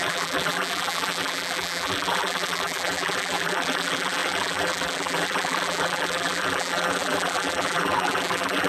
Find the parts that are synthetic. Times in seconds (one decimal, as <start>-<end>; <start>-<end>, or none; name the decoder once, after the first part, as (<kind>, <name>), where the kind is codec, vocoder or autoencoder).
0.0-8.7 (vocoder, BigVGAN v2)